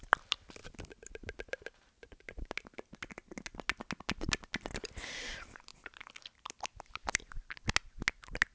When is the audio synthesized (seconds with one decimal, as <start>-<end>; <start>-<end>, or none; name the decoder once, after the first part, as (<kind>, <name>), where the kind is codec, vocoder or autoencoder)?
none